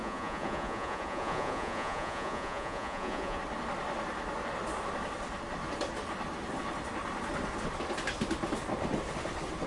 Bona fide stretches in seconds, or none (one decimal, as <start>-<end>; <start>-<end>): 3.4-9.7

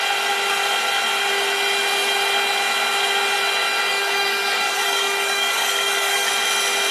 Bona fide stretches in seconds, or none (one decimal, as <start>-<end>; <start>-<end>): 0.0-3.9; 6.3-6.9

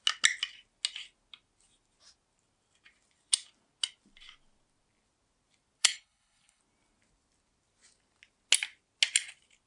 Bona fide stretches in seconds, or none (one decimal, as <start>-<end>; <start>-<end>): 0.0-5.8; 6.6-9.7